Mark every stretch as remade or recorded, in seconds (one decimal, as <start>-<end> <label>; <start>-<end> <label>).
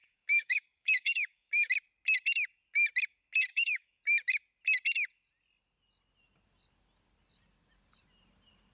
0.0-1.7 remade; 1.7-3.5 recorded; 3.5-4.0 remade; 4.0-8.7 recorded